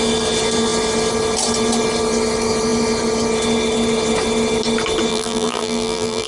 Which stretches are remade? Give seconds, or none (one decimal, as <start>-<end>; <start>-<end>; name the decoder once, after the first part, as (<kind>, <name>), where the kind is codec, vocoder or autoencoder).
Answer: 5.1-6.3 (vocoder, BigVGAN v2)